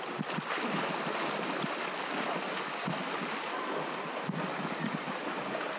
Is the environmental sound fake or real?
real